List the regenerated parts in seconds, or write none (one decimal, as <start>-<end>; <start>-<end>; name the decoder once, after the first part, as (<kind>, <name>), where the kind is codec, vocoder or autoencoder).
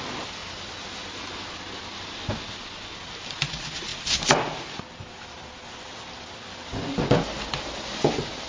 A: none